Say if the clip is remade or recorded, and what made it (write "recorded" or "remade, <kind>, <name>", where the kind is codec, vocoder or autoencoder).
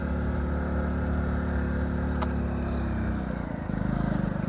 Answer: recorded